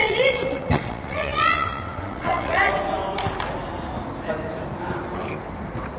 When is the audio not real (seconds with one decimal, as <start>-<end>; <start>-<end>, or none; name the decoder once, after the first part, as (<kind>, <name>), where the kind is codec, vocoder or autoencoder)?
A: 0.0-2.7 (vocoder, WaveNeXt)